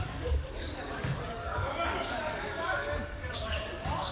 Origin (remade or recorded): remade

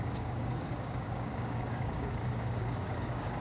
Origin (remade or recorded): remade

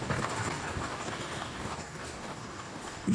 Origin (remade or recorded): remade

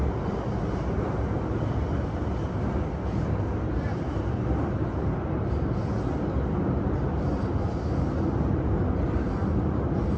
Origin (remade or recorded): recorded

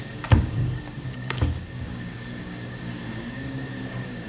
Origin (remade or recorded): remade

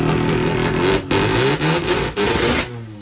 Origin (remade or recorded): recorded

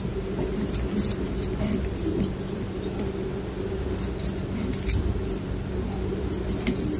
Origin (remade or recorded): recorded